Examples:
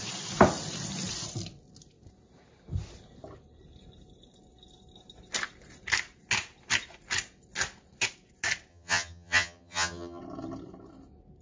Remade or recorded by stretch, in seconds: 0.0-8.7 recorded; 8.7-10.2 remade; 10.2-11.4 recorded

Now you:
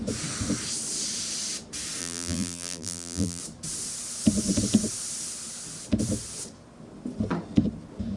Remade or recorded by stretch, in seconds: 0.0-2.0 recorded; 2.0-3.4 remade; 3.4-8.2 recorded

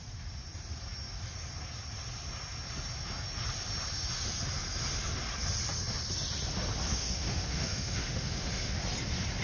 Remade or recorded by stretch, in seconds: 0.0-6.9 recorded; 6.9-8.8 remade; 8.8-9.4 recorded

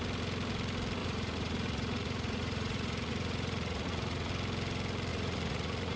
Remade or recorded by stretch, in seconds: 0.0-1.0 recorded; 1.0-4.3 remade; 4.3-5.1 recorded; 5.1-6.0 remade